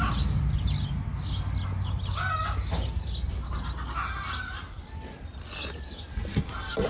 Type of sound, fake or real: real